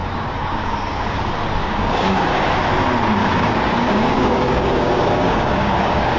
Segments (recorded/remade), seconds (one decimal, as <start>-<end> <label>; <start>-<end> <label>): 0.0-1.2 remade; 1.2-1.6 recorded; 1.6-2.6 remade; 2.6-3.2 recorded; 3.2-6.2 remade